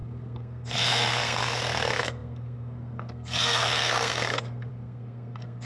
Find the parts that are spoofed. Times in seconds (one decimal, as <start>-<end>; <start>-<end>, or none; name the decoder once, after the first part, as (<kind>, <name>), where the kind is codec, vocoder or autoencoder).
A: 0.0-5.7 (codec, SNAC)